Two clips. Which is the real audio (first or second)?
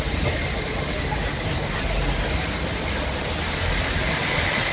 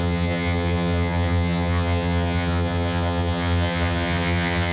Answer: first